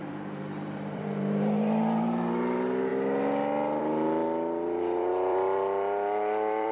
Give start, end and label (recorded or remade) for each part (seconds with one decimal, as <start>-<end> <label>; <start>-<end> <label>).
0.0-2.9 remade; 2.9-3.8 recorded; 3.8-6.7 remade